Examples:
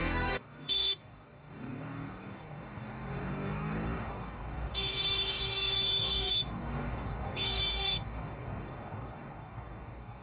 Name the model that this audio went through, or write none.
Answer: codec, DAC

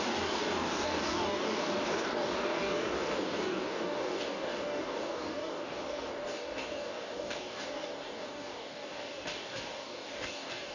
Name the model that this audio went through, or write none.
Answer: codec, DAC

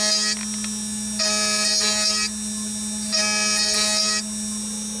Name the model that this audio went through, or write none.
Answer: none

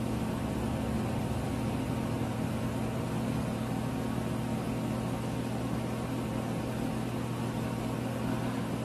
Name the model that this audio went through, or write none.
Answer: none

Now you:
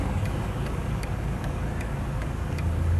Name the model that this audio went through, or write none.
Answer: codec, DAC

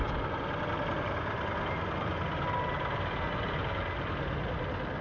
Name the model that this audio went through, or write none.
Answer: none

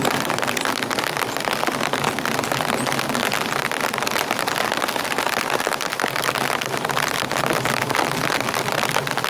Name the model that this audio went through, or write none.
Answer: none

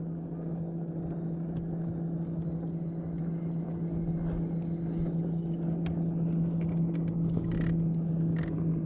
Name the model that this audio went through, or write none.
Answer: none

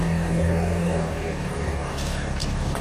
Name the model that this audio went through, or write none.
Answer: codec, DAC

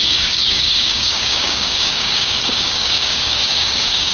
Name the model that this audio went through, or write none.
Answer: codec, DAC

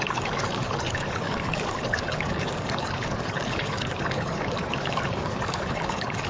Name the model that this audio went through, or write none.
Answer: codec, DAC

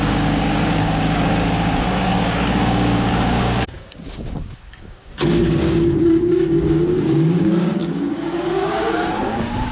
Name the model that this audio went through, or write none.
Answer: codec, DAC